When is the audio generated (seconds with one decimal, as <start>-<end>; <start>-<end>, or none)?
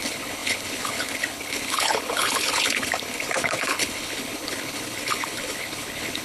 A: 0.0-6.2